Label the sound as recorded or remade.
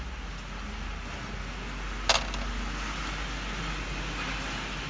recorded